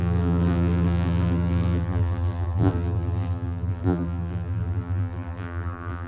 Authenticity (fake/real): fake